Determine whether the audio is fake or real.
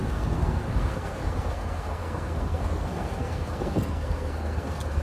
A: fake